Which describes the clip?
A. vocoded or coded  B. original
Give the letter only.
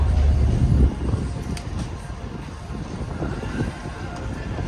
A